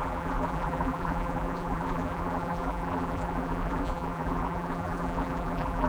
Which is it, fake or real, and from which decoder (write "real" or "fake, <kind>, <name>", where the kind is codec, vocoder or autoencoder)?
fake, vocoder, BigVGAN v2